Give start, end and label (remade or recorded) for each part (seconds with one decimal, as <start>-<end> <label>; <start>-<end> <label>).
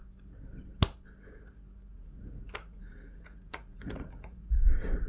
0.0-1.9 recorded; 1.9-5.1 remade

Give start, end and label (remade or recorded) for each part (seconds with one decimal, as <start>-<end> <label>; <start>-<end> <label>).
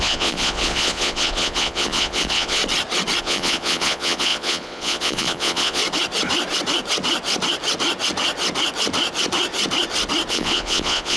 0.0-2.6 remade; 2.6-3.2 recorded; 3.2-5.8 remade; 5.8-10.3 recorded; 10.3-11.2 remade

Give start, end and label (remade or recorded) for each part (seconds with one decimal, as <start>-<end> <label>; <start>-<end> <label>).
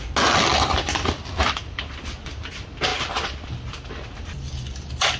0.0-5.2 recorded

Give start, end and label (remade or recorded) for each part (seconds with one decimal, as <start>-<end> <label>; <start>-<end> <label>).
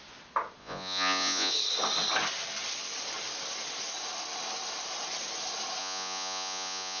0.0-0.6 recorded; 0.6-1.5 remade; 1.5-5.8 recorded; 5.8-7.0 remade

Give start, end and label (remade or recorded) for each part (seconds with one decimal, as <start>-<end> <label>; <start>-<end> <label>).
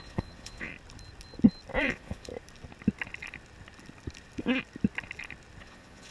0.0-0.7 remade; 0.7-1.8 recorded; 1.8-2.3 remade; 2.3-5.6 recorded; 5.6-6.1 remade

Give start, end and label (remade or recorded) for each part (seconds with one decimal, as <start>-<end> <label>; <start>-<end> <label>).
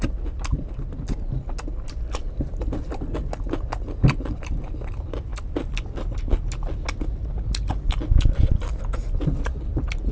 0.0-10.1 recorded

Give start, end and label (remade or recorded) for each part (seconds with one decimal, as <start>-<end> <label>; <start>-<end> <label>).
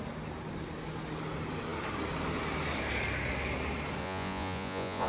0.0-4.0 recorded; 4.0-5.1 remade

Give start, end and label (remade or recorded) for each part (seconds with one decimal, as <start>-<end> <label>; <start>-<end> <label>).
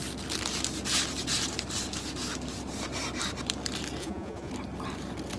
0.0-4.0 recorded; 4.0-4.5 remade; 4.5-5.4 recorded